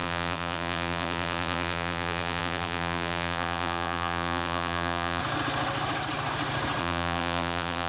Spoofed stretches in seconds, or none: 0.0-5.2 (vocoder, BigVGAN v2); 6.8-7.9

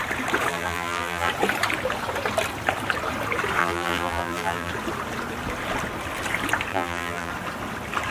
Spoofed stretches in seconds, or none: 0.5-1.3 (vocoder, BigVGAN v2); 3.6-4.7; 6.7-7.3

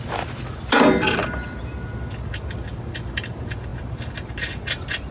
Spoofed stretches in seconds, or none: none

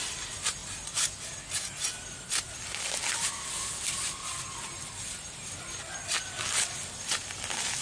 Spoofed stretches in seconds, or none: none

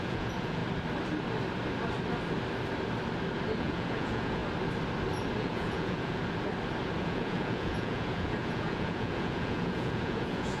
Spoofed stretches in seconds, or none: 0.0-0.6 (vocoder, Vocos); 3.6-4.4; 5.4-6.2; 7.0-10.6

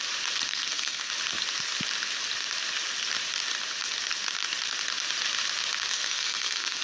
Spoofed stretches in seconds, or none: 0.5-1.1 (codec, SNAC); 5.9-6.8

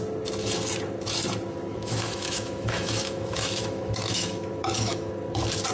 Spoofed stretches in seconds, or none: 1.7-5.1 (autoencoder, DAC-VAE)